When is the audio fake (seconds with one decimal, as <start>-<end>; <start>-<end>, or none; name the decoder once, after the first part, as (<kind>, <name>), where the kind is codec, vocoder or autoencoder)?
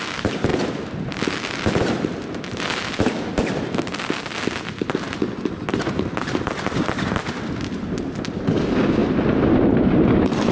none